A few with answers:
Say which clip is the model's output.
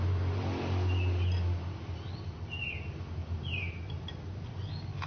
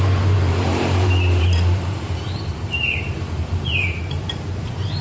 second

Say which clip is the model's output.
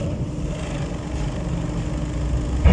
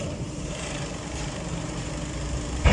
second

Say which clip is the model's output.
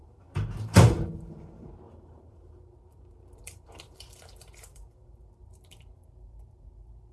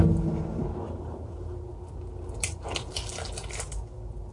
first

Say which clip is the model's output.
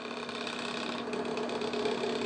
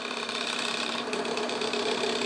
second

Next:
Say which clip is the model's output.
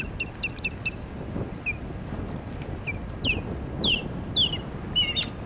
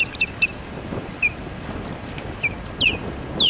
second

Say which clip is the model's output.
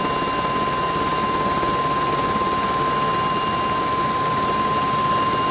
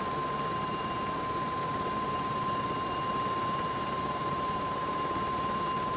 second